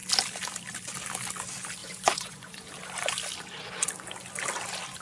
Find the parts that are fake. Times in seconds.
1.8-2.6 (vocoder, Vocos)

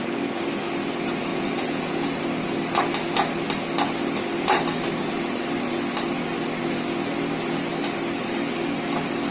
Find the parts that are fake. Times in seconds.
1.3-2.2 (vocoder, Vocos)

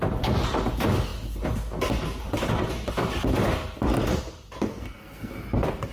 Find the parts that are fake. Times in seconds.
4.7-5.3 (codec, SNAC)

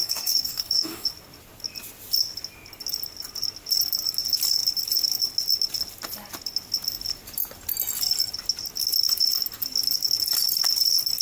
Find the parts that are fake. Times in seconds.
0.0-1.1 (codec, DAC)

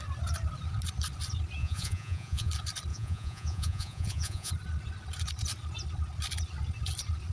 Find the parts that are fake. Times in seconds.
1.6-2.5 (vocoder, Vocos); 2.9-4.5